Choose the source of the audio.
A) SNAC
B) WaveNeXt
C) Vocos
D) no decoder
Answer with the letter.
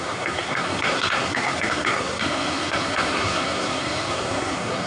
A